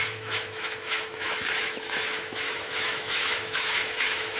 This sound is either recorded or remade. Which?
remade